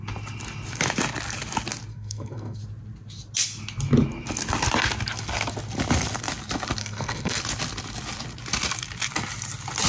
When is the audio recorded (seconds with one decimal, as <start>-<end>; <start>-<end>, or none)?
0.0-1.9; 2.6-6.8; 7.4-9.9